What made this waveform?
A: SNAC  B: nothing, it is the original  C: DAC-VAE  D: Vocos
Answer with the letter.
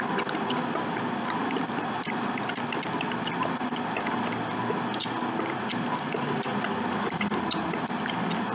B